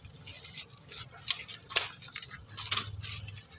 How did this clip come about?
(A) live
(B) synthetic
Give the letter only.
A